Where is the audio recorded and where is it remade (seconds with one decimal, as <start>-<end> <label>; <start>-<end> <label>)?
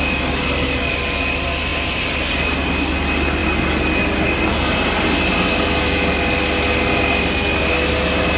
0.0-8.4 recorded